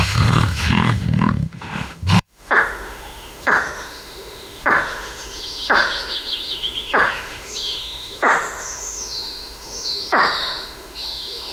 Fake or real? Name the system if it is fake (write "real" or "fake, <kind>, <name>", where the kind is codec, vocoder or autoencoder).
fake, autoencoder, DAC-VAE